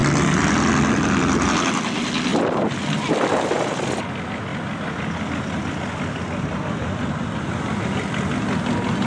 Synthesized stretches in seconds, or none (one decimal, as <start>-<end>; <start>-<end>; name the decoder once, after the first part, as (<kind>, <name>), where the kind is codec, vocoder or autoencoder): none